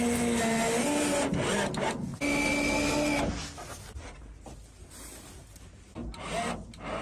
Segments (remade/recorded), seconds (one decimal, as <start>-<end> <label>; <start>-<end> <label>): 0.0-7.0 recorded